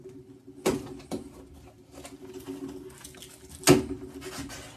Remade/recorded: recorded